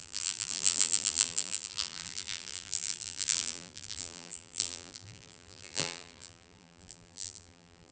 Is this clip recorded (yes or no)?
no